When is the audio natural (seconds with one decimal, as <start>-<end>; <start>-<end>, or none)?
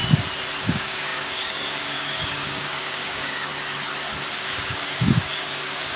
0.0-0.6; 3.5-4.3